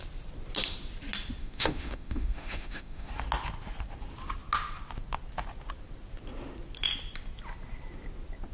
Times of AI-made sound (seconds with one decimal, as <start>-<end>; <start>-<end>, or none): 1.4-3.1